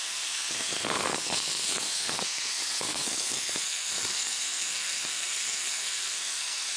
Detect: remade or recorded remade